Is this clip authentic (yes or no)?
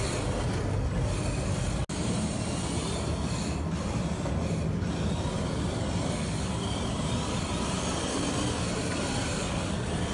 yes